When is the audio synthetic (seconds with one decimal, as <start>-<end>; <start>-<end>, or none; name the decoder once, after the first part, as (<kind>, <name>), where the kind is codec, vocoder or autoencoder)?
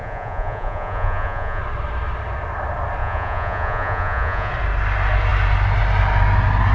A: 0.0-1.6 (vocoder, Vocos); 3.0-4.5